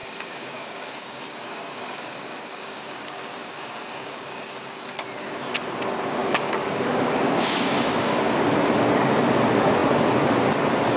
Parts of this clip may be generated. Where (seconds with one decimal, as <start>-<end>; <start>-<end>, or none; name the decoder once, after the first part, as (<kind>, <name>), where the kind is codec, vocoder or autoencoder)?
0.0-4.8 (codec, DAC); 6.2-8.4